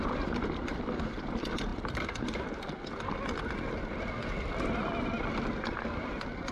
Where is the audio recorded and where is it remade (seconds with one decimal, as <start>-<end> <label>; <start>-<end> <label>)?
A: 0.0-6.5 recorded